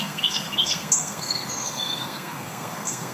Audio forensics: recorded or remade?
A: remade